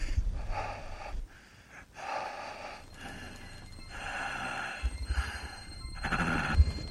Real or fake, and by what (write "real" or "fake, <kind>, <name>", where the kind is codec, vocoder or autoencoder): real